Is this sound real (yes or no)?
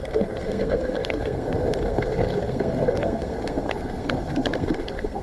no